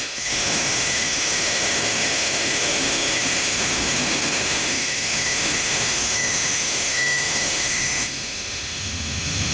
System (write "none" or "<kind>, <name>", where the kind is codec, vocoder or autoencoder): autoencoder, DAC-VAE